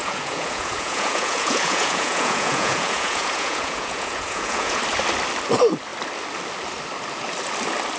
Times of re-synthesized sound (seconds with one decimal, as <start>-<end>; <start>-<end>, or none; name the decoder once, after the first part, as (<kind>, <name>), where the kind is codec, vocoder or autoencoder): 0.0-4.8 (vocoder, Vocos)